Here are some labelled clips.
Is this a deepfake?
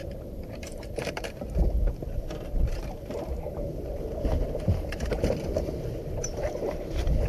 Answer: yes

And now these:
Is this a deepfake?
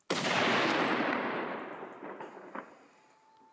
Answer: no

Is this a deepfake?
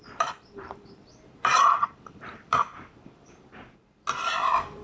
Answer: yes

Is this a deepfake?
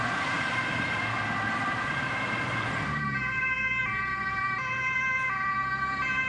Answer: yes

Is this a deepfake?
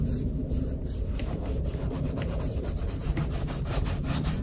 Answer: yes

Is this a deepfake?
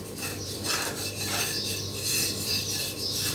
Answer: yes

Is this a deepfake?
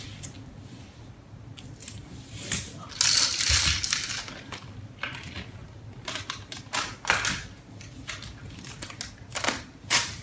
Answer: no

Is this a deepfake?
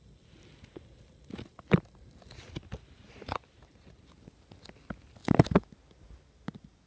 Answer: no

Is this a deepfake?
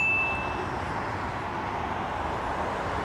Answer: no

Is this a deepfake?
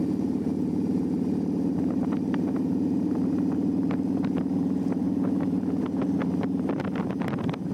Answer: yes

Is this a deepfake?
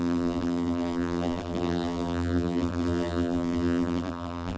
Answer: yes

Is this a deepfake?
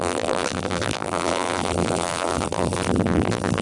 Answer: yes